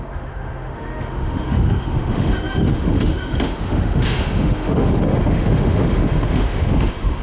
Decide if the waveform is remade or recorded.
remade